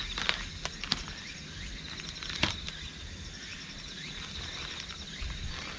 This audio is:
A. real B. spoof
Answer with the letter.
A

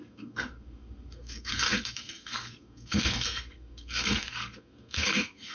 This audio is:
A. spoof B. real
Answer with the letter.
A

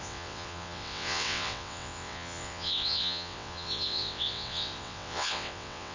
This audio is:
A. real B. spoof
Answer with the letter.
B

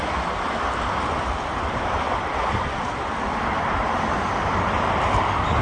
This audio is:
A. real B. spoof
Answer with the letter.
A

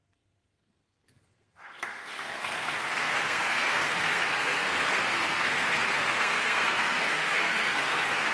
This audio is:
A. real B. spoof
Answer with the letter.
B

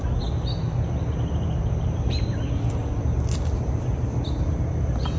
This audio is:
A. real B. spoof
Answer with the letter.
A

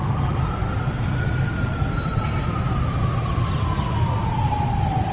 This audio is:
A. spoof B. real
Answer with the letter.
B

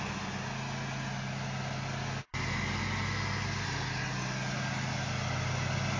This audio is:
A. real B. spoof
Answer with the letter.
A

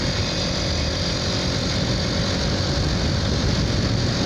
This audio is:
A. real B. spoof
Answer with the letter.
A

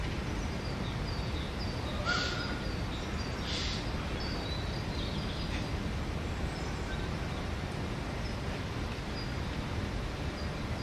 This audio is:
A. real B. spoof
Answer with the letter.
A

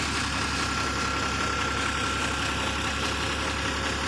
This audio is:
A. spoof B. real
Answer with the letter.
B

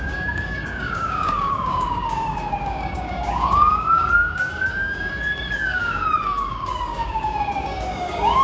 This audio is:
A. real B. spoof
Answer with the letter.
B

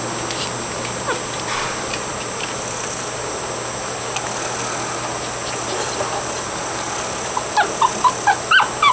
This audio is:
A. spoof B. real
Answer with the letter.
B